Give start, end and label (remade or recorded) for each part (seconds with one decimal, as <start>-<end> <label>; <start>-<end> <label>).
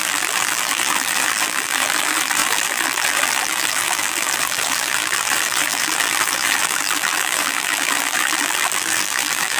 0.0-9.6 remade